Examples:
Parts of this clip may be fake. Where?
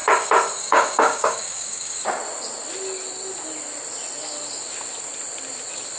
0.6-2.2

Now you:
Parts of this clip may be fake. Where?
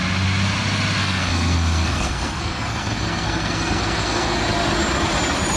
1.0-4.4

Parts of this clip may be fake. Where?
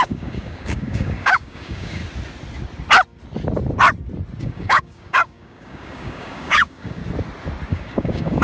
0.0-2.0; 4.4-7.0; 7.7-8.4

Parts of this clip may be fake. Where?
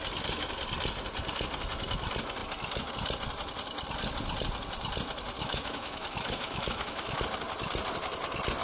5.4-7.2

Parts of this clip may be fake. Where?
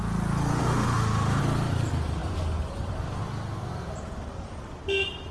0.6-1.4